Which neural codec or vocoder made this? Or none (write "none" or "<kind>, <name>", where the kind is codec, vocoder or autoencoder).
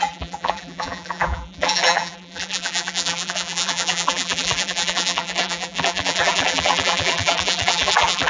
vocoder, BigVGAN v2